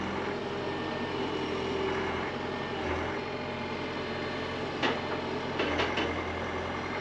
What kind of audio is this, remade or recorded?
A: recorded